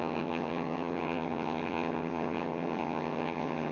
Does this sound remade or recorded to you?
remade